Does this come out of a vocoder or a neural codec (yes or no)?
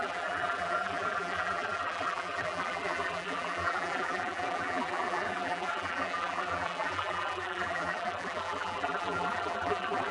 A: yes